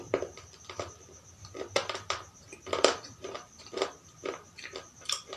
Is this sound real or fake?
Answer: fake